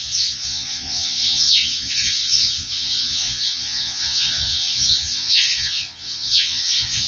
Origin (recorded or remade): remade